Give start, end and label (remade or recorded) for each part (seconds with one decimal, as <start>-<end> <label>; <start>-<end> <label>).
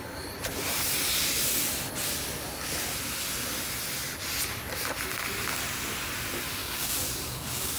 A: 0.0-6.6 recorded; 6.6-7.8 remade